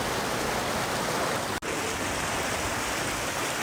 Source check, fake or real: real